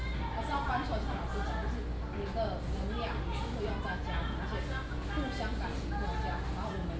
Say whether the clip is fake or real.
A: real